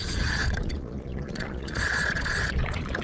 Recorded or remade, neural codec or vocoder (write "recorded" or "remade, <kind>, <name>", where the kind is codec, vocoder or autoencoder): remade, vocoder, Vocos